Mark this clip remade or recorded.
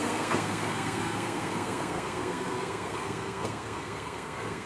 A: remade